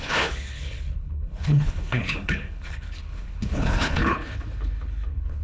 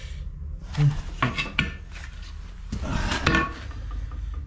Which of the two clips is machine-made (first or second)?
first